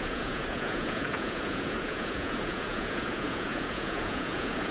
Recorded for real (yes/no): no